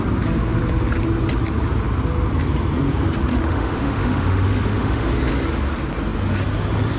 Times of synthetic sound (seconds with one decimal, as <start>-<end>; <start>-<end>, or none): 3.3-5.1